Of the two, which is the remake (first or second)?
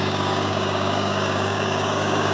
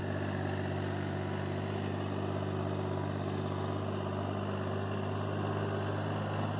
first